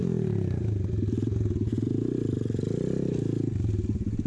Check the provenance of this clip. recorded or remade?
recorded